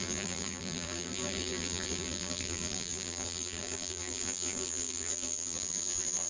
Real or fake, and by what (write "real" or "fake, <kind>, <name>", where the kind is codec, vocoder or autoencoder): fake, vocoder, BigVGAN v2